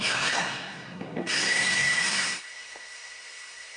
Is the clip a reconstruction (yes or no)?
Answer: yes